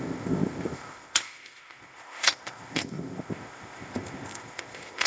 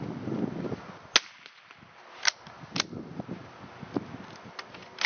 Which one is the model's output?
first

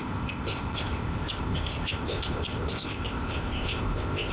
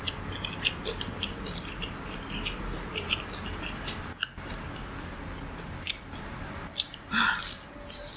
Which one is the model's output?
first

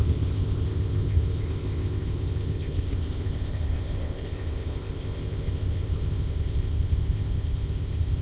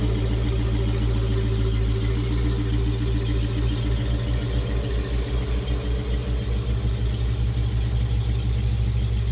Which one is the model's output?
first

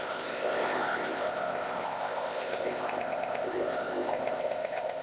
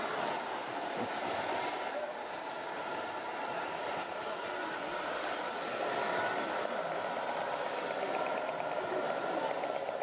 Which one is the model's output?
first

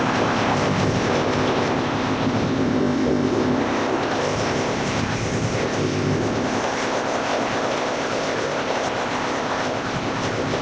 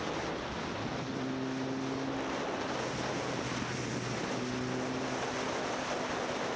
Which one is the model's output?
first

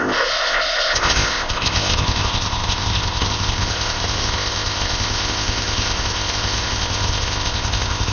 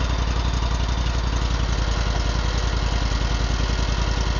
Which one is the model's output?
first